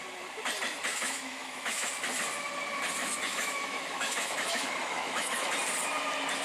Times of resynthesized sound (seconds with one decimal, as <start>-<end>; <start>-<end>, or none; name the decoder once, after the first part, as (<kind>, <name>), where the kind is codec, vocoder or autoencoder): 0.9-1.9 (autoencoder, DAC-VAE); 3.0-5.5